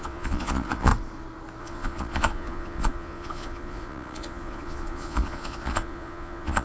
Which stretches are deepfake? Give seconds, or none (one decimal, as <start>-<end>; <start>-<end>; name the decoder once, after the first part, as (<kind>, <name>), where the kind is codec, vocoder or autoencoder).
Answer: 0.0-0.9 (vocoder, Vocos); 1.6-6.6